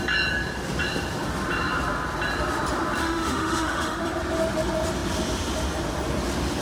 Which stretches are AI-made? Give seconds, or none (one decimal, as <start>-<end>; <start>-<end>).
3.0-4.0